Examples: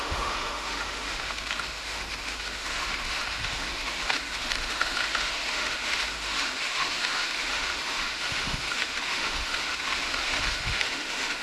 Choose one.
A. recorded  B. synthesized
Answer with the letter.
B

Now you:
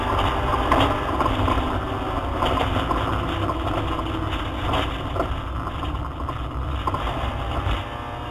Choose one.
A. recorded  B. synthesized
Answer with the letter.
A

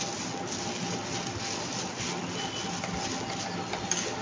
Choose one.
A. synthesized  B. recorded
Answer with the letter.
B